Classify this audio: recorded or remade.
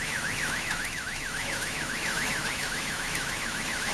remade